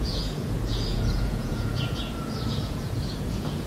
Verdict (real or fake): fake